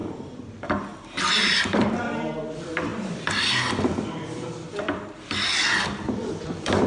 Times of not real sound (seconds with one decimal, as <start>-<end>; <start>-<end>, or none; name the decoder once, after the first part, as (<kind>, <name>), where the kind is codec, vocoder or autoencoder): 0.0-0.9 (vocoder, BigVGAN v2); 1.6-6.9